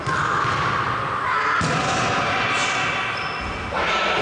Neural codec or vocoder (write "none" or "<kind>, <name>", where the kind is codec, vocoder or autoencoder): none